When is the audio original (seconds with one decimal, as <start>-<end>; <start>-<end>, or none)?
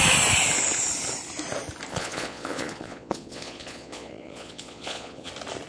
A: 0.0-1.9; 5.3-5.7